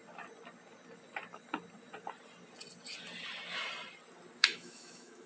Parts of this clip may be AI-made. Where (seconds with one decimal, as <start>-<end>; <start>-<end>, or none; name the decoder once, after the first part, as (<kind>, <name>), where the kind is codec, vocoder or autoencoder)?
4.4-5.3 (autoencoder, DAC-VAE)